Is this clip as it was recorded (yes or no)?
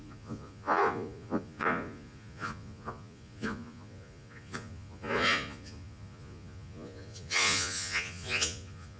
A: no